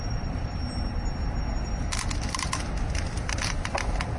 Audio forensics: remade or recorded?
recorded